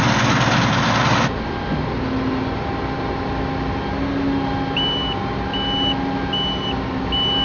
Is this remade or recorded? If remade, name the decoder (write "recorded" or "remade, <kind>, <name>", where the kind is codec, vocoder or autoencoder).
recorded